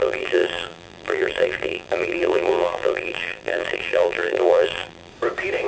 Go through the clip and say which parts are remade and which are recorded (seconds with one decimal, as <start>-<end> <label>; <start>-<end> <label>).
0.0-5.1 remade; 5.1-5.7 recorded

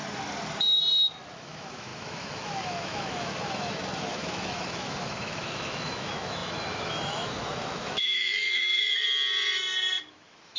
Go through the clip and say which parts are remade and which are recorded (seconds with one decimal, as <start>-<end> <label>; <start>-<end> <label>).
0.0-1.4 recorded; 1.4-8.8 remade; 8.8-10.1 recorded; 10.1-10.6 remade

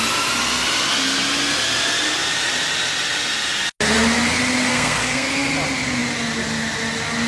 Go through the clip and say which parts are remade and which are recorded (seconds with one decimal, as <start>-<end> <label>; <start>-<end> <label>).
0.0-4.7 recorded; 4.7-5.3 remade; 5.3-7.3 recorded

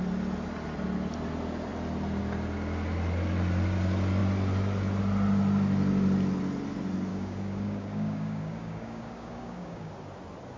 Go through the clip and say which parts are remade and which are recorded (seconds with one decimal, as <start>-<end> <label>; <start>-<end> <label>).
0.0-7.1 recorded; 7.1-9.9 remade; 9.9-10.6 recorded

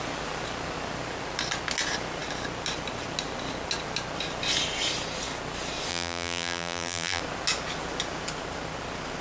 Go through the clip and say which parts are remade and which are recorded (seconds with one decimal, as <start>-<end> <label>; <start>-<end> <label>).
0.0-5.9 recorded; 5.9-7.2 remade; 7.2-9.2 recorded

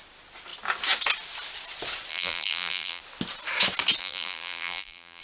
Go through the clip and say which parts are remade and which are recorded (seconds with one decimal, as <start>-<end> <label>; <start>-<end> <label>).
0.0-2.1 recorded; 2.1-3.0 remade; 3.0-4.0 recorded; 4.0-5.2 remade

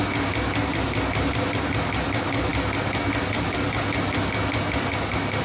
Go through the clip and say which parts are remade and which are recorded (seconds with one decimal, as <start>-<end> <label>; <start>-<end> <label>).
0.0-5.4 recorded